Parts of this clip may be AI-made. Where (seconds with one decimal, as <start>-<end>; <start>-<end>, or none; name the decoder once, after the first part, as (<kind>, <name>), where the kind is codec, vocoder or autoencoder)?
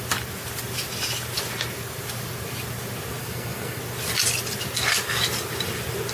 3.2-3.8 (codec, SNAC)